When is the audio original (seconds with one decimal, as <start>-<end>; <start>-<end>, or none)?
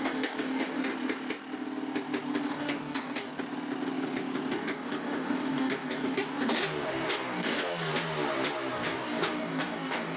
0.9-2.4; 3.3-4.5; 7.9-8.7